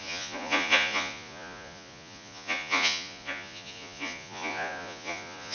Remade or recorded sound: remade